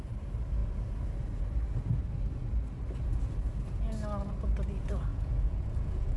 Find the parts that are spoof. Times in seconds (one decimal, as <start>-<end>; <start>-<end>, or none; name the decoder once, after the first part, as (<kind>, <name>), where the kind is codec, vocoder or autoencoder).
5.1-6.2 (vocoder, Vocos)

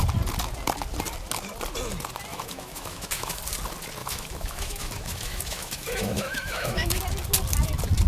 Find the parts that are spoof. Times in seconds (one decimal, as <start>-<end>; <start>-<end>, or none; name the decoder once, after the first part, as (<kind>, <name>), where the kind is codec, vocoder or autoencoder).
2.3-3.4 (autoencoder, DAC-VAE); 4.0-7.0